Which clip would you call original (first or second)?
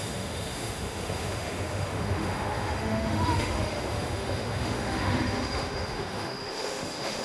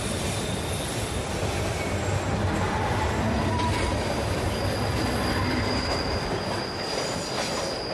second